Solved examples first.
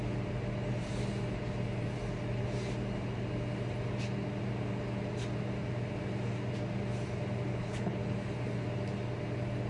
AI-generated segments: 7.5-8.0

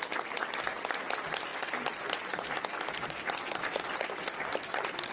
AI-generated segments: none

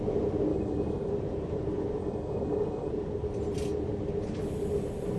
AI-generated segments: 0.5-1.1; 2.0-2.9

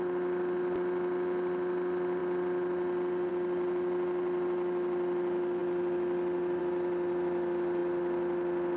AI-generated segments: none

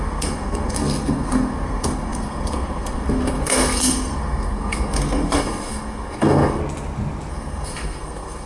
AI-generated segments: 0.0-6.6; 7.3-8.5

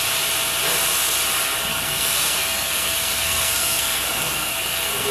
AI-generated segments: 1.7-5.1